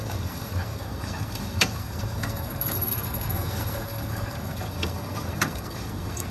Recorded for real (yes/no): no